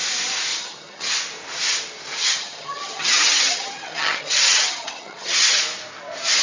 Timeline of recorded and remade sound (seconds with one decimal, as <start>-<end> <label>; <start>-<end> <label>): 0.0-0.5 recorded; 0.5-1.1 remade; 1.1-2.2 recorded; 2.2-5.6 remade; 5.6-6.4 recorded